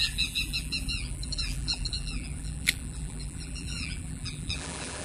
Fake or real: fake